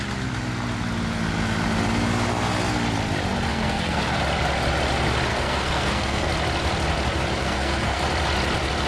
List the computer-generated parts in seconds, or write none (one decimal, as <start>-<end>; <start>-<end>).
3.5-4.2; 5.3-6.3; 7.4-8.0